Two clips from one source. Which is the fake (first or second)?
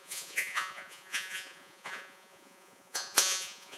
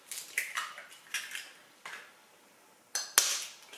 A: first